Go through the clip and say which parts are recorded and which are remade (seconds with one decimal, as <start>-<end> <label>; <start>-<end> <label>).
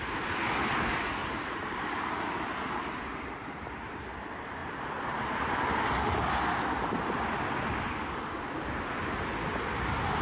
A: 0.0-1.2 recorded; 1.2-2.5 remade; 2.5-3.4 recorded; 3.4-4.0 remade; 4.0-4.6 recorded; 4.6-5.2 remade; 5.2-10.2 recorded